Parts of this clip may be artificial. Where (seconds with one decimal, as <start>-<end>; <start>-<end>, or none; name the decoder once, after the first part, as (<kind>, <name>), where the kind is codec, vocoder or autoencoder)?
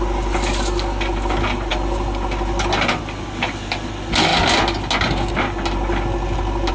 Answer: none